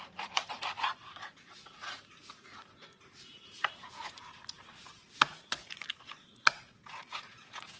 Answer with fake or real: fake